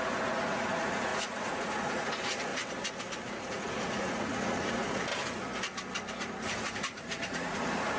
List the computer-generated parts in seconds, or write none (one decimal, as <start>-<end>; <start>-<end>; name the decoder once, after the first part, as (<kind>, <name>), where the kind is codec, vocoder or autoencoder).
0.0-2.5 (vocoder, Vocos); 3.3-5.1; 6.2-8.0